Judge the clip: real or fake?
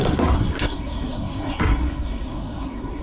fake